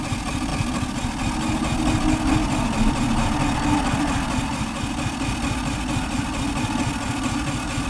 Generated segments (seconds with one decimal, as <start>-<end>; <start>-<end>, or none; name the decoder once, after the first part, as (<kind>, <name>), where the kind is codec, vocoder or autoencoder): none